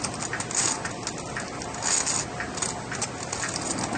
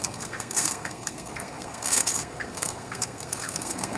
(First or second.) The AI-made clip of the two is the second